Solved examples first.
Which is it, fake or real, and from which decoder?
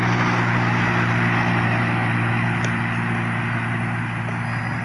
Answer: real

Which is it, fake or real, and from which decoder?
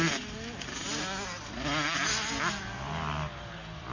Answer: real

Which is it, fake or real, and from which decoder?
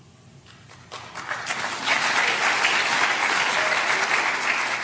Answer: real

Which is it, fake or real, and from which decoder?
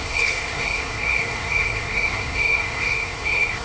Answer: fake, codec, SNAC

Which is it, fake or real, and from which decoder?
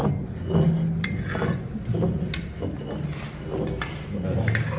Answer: real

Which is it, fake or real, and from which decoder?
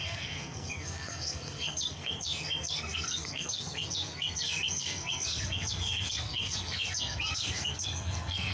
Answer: fake, codec, SNAC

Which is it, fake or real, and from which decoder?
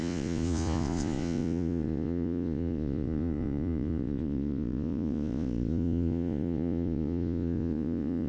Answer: fake, vocoder, Vocos